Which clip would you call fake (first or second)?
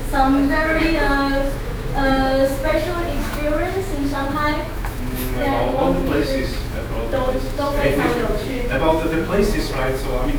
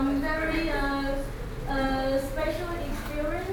first